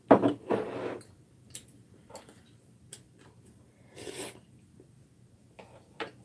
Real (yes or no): no